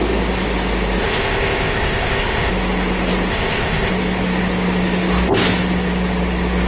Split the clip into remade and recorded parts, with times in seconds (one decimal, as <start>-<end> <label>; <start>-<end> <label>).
0.0-1.0 recorded; 1.0-2.5 remade; 2.5-3.3 recorded; 3.3-3.9 remade; 3.9-6.7 recorded